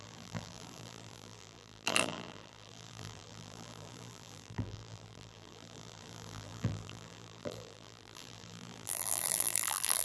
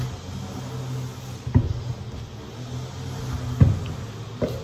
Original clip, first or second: second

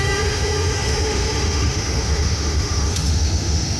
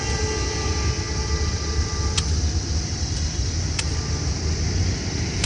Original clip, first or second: second